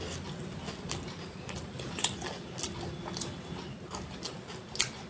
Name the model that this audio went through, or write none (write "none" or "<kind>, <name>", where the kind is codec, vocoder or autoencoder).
none